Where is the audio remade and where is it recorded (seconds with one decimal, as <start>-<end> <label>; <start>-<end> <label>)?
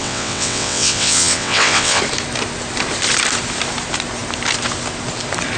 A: 0.0-2.0 remade; 2.0-5.6 recorded